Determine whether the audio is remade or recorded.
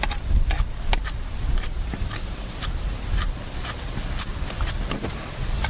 recorded